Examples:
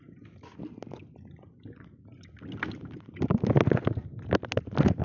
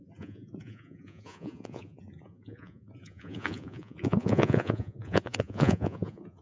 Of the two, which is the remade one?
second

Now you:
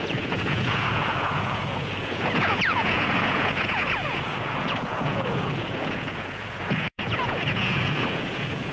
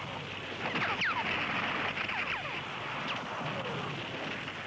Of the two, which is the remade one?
first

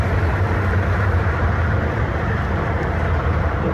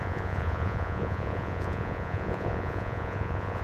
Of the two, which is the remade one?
second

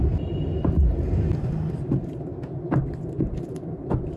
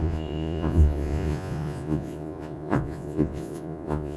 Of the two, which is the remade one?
second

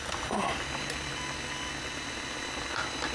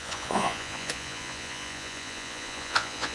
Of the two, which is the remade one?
second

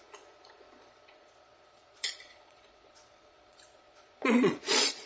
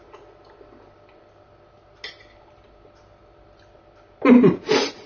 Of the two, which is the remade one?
first